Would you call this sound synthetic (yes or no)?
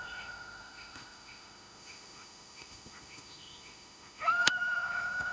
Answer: yes